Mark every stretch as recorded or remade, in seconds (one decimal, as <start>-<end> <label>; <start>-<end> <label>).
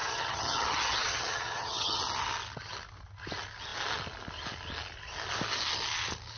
0.0-2.0 remade; 2.0-6.4 recorded